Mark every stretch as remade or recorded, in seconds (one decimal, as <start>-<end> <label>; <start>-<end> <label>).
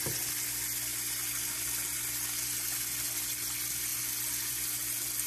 0.0-5.3 recorded